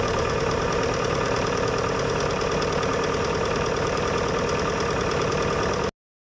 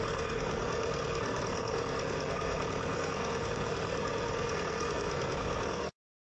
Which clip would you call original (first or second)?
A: first